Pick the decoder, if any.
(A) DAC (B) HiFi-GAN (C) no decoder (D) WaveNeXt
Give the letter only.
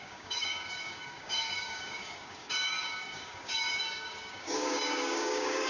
A